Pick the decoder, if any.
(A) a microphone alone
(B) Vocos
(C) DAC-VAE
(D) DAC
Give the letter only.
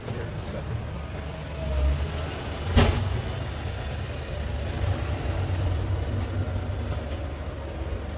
A